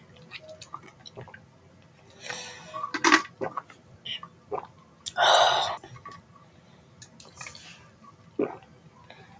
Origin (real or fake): real